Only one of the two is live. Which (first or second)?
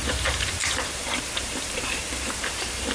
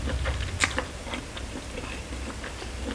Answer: second